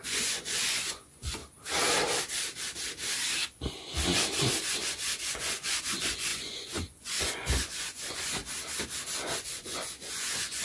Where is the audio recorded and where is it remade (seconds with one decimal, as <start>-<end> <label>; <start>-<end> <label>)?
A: 0.0-1.4 remade; 1.4-4.6 recorded; 4.6-8.4 remade; 8.4-9.1 recorded; 9.1-10.6 remade